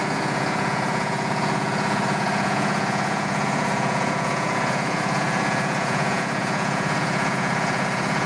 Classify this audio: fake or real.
fake